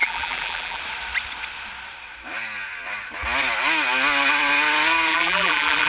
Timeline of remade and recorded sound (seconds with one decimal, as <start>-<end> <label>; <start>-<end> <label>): 0.0-0.8 remade; 0.8-5.1 recorded; 5.1-5.9 remade